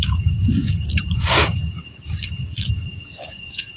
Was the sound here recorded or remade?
remade